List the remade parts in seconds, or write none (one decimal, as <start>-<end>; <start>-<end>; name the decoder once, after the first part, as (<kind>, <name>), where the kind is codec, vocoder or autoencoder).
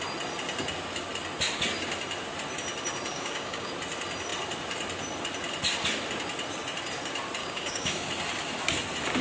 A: 3.1-3.7 (codec, DAC); 7.4-8.1